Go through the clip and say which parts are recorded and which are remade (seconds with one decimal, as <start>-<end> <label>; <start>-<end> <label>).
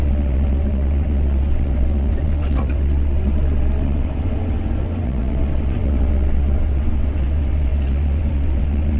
0.0-9.0 remade